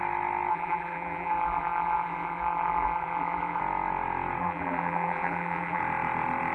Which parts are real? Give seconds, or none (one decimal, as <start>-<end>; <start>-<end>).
0.0-0.5; 3.6-4.4; 5.8-6.5